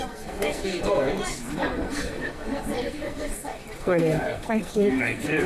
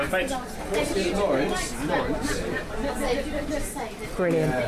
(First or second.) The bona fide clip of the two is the second